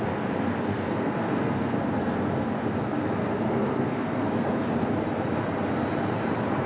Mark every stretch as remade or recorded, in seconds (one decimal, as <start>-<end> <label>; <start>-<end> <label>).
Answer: 0.0-0.7 recorded; 0.7-2.2 remade; 2.2-3.2 recorded; 3.2-4.7 remade; 4.7-6.7 recorded